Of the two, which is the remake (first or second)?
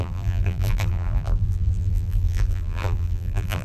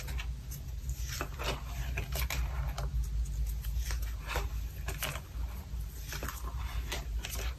first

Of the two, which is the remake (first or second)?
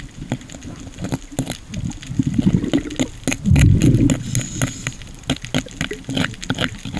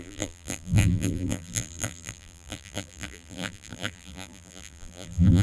second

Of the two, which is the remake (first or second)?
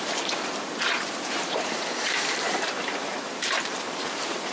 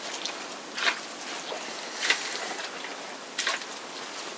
first